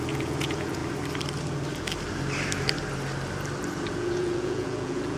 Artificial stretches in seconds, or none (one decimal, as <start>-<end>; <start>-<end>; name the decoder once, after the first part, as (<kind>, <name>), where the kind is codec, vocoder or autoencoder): 0.0-0.8 (vocoder, Vocos); 3.9-5.2

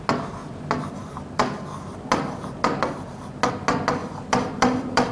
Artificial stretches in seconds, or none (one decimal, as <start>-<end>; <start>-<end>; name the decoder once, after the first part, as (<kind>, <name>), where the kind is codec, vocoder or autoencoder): 4.0-5.1 (vocoder, BigVGAN v2)

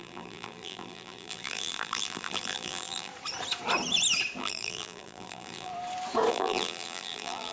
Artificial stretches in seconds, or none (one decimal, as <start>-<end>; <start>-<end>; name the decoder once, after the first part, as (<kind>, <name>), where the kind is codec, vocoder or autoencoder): 0.0-3.1 (vocoder, BigVGAN v2); 4.4-5.7; 6.3-7.5

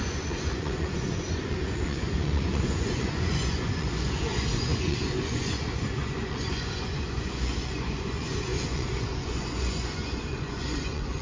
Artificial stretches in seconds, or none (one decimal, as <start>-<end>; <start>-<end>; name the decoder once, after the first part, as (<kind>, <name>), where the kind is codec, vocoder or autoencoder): 0.0-11.2 (vocoder, Vocos)

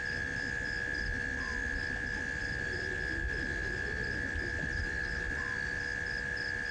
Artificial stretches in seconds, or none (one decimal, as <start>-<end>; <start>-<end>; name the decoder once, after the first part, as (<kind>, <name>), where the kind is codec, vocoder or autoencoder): none

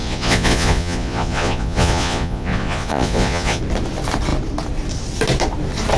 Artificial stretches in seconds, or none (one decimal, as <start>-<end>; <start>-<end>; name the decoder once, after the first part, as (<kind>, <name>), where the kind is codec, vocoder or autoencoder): 0.0-3.6 (vocoder, Vocos)

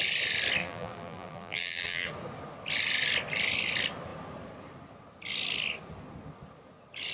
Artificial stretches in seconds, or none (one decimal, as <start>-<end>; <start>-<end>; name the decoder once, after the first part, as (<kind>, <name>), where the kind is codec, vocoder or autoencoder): 0.6-2.1 (vocoder, BigVGAN v2)

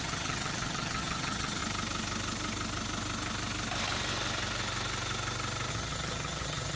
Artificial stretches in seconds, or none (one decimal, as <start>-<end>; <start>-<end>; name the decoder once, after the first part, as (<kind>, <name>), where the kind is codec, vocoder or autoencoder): 0.0-1.6 (vocoder, HiFi-GAN); 5.7-6.8